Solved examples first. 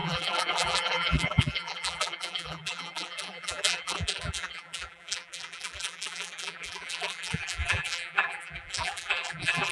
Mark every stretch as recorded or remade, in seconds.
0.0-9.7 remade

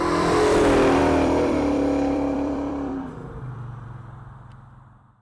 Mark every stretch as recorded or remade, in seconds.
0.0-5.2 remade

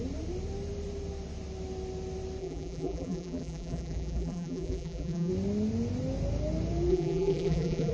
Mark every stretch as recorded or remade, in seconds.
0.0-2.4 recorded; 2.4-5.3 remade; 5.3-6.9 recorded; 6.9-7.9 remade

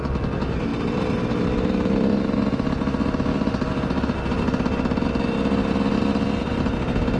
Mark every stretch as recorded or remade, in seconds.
0.0-7.2 recorded